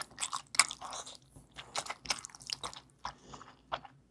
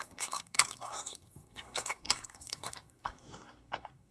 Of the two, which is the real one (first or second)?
first